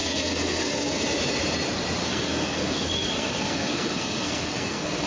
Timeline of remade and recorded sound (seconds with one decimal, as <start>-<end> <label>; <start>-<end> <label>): 0.0-1.0 remade; 1.0-2.0 recorded; 2.0-5.1 remade